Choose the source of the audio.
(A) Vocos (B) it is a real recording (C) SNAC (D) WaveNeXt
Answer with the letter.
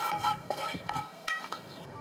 C